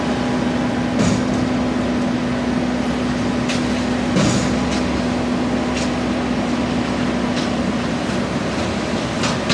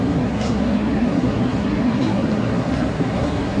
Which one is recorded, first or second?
first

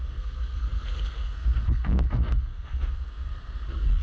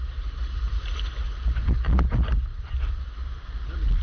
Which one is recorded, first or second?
second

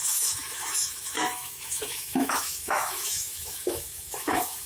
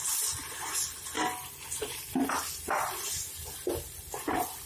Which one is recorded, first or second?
second